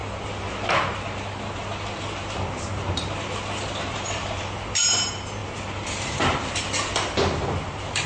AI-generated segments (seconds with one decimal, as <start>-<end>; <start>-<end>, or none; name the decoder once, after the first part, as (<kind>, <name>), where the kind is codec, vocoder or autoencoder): none